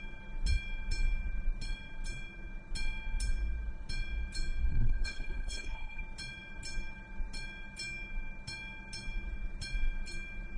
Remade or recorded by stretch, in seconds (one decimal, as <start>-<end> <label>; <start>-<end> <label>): 0.0-4.7 recorded; 4.7-6.0 remade; 6.0-10.6 recorded